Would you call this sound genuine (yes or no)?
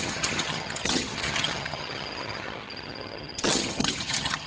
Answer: no